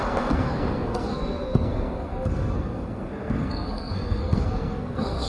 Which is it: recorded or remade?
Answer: remade